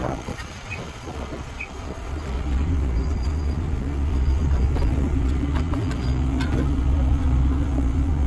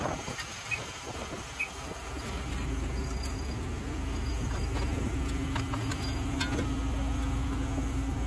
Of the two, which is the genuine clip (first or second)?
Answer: second